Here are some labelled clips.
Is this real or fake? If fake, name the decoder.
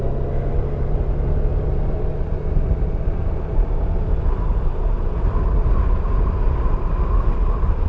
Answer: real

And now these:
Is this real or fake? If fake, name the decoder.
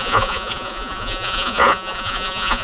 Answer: fake, vocoder, Vocos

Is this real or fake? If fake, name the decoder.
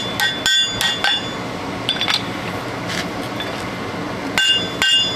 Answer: real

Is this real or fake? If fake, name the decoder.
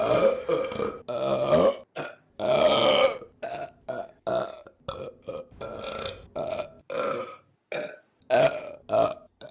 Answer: real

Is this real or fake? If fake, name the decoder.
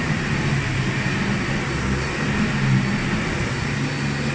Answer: real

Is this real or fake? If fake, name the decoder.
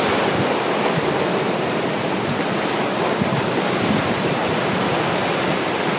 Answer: real